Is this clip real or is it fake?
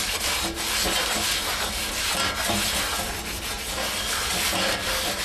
real